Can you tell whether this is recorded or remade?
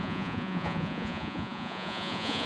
remade